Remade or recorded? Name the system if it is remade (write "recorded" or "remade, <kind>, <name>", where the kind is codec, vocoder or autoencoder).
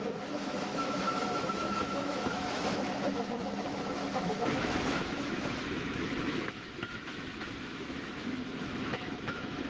remade, autoencoder, DAC-VAE